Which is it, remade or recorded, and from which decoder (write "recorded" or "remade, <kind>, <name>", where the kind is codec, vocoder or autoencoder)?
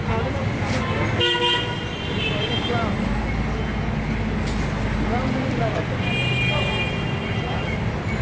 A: recorded